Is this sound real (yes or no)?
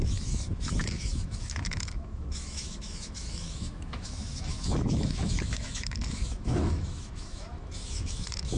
no